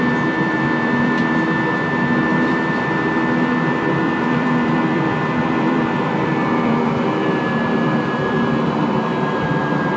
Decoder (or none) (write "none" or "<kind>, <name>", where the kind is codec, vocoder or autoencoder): vocoder, BigVGAN v2